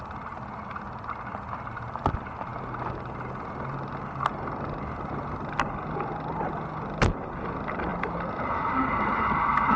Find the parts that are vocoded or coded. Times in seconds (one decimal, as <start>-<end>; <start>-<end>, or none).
none